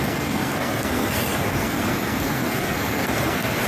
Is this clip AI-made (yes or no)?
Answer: yes